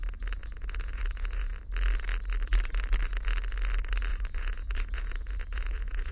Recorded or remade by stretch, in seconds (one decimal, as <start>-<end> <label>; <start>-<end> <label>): 0.0-0.4 recorded; 0.4-1.5 remade; 1.5-4.1 recorded; 4.1-6.1 remade